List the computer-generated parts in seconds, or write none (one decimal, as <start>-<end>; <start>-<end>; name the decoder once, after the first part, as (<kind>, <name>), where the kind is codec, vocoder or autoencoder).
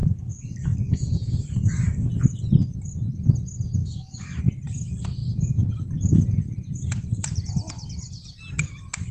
0.0-2.1 (codec, DAC); 3.8-4.4